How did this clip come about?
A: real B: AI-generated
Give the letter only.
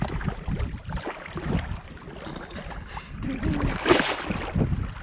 A